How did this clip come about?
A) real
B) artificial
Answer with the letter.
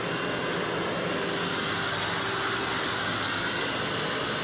A